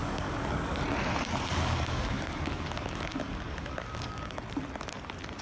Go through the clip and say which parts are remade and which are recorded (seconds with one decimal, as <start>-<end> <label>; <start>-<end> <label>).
0.0-0.8 remade; 0.8-1.5 recorded; 1.5-4.4 remade; 4.4-5.4 recorded